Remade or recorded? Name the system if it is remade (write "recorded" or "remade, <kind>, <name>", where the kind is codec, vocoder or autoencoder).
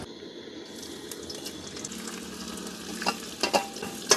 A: recorded